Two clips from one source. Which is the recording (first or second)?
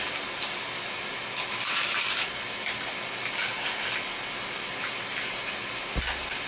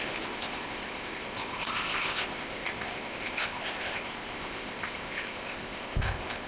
first